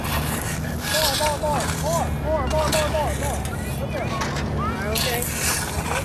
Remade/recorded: recorded